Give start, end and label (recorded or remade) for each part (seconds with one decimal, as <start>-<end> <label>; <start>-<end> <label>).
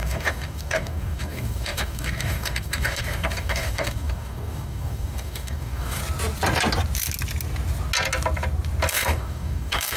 0.0-6.0 remade; 6.0-8.9 recorded; 8.9-10.0 remade